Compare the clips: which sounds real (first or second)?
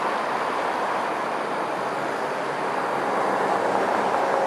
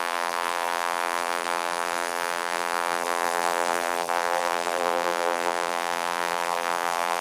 first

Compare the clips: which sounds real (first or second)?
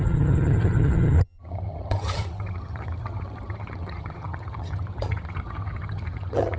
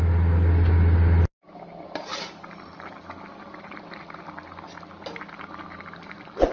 second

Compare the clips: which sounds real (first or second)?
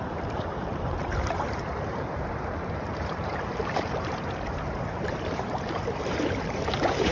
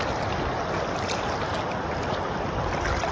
second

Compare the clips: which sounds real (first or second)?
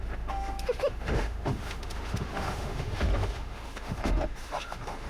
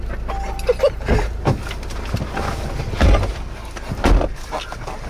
second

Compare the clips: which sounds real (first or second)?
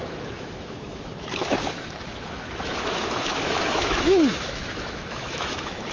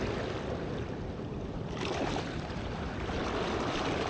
second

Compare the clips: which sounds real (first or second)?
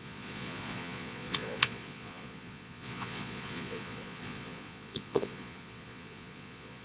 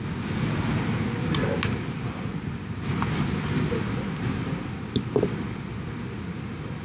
second